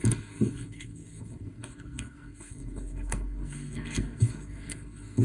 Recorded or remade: remade